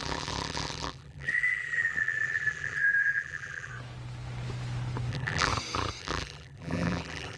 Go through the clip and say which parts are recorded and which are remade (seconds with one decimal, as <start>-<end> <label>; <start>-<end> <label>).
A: 0.0-3.7 remade; 3.7-5.1 recorded; 5.1-5.5 remade; 5.5-6.0 recorded; 6.0-7.4 remade